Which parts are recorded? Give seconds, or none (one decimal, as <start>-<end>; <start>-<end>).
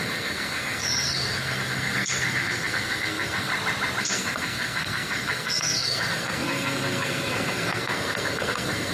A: 3.5-4.0